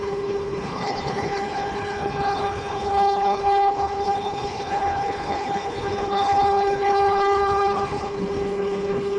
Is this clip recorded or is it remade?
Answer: remade